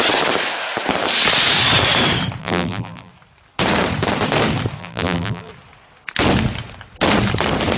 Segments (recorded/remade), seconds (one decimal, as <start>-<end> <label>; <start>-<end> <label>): 0.0-2.4 recorded; 2.4-3.1 remade; 3.1-4.8 recorded; 4.8-5.5 remade; 5.5-7.8 recorded